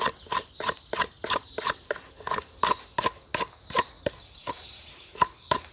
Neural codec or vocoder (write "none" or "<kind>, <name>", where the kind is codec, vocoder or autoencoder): none